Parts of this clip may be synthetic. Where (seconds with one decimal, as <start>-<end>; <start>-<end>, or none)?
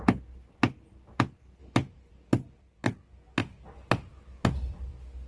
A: none